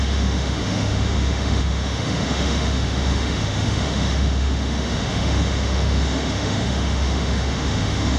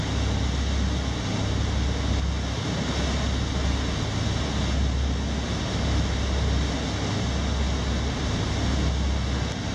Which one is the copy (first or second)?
first